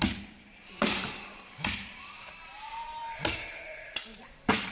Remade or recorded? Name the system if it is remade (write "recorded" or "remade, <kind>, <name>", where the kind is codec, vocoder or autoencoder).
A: remade, vocoder, BigVGAN v2